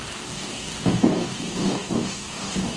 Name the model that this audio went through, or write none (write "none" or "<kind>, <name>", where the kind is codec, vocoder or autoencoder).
codec, DAC